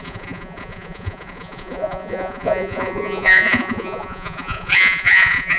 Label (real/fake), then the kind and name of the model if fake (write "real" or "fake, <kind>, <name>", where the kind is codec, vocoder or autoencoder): fake, vocoder, Vocos